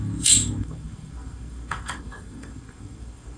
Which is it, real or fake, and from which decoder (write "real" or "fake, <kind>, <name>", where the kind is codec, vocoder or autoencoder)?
fake, codec, SNAC